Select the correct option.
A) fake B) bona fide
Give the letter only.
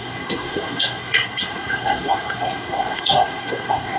A